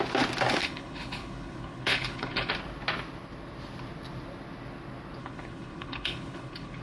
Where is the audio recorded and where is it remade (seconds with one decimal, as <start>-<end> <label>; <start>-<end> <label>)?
0.0-0.6 recorded; 0.6-2.5 remade; 2.5-5.2 recorded; 5.2-6.8 remade